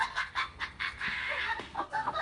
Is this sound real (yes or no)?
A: no